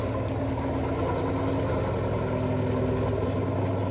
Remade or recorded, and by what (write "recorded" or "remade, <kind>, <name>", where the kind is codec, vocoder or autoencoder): recorded